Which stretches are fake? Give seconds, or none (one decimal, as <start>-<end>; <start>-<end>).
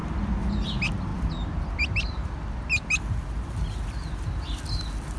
none